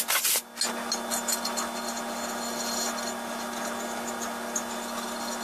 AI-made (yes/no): no